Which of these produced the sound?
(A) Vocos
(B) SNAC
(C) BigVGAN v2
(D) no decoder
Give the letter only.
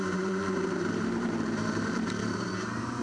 C